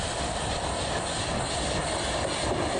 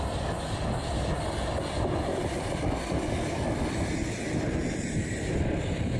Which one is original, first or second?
second